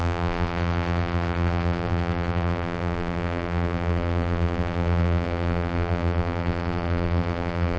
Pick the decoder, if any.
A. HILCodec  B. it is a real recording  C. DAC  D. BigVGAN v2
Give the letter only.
D